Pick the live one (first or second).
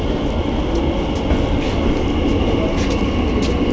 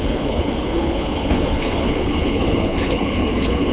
first